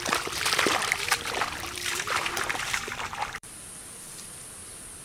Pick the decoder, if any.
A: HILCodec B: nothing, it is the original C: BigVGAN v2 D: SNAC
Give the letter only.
C